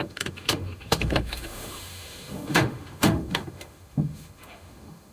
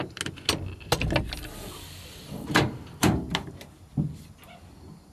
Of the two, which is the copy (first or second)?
first